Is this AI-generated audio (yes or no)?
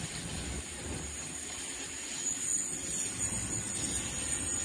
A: no